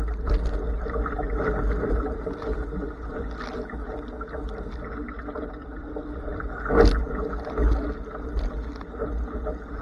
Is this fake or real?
real